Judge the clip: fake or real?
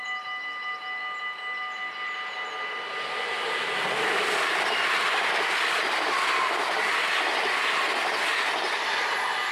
real